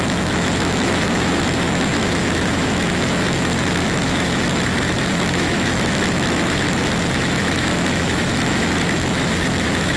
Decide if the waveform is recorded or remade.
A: remade